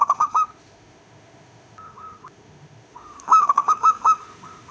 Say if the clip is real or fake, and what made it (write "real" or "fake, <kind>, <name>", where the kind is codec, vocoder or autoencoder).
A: fake, autoencoder, DAC-VAE